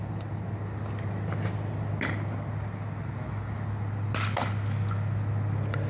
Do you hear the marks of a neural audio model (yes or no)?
no